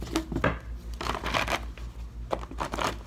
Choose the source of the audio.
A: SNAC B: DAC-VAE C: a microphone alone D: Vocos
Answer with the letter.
C